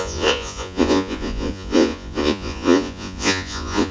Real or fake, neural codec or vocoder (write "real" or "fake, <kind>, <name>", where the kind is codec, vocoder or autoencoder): fake, vocoder, Vocos